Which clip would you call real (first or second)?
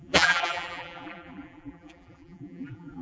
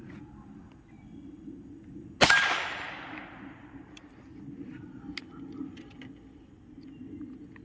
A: second